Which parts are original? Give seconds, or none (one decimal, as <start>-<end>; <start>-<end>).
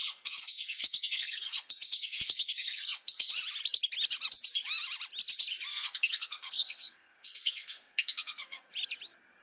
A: 3.3-5.7; 8.7-9.4